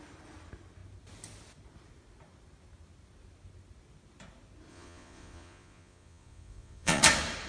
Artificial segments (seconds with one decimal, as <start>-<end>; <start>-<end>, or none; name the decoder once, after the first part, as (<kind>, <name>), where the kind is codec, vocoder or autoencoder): 4.7-7.0 (vocoder, Vocos)